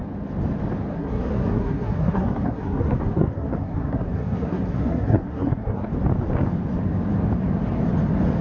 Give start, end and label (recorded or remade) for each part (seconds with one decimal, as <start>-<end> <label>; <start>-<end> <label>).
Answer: 0.0-0.9 recorded; 0.9-5.9 remade; 5.9-8.4 recorded